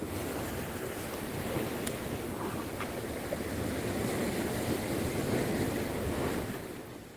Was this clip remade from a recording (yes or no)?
no